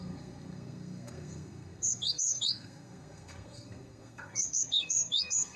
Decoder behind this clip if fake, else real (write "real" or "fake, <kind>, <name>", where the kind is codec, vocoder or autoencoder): fake, codec, SNAC